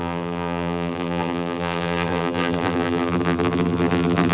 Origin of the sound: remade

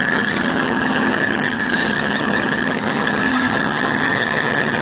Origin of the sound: remade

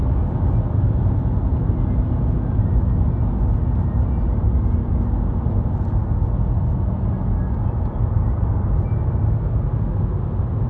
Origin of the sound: recorded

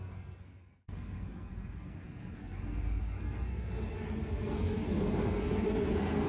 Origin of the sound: remade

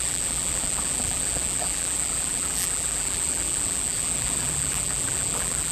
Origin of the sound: remade